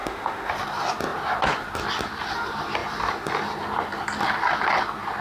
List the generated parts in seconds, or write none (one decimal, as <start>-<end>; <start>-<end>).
0.0-0.5